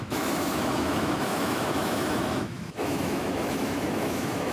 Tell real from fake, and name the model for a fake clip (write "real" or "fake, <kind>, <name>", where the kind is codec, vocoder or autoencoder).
fake, autoencoder, DAC-VAE